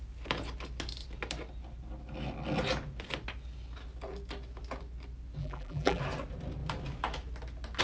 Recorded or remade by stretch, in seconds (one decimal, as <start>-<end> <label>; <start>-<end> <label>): 0.0-5.4 recorded; 5.4-6.0 remade; 6.0-7.8 recorded

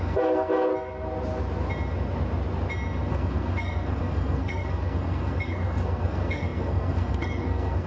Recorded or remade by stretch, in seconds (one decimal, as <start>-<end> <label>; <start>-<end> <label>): 0.0-0.7 remade; 0.7-3.1 recorded; 3.1-7.9 remade